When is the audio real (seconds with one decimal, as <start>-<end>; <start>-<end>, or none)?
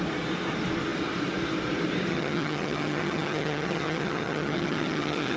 0.0-2.1